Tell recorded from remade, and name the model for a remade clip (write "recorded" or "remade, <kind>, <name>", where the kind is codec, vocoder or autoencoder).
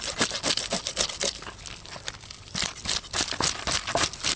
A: recorded